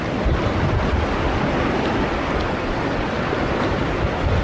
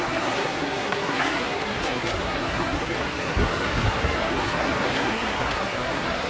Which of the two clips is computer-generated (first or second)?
second